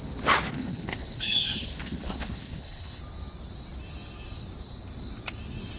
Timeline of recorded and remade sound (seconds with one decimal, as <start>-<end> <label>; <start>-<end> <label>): 0.0-0.5 recorded; 0.5-3.0 remade; 3.0-5.8 recorded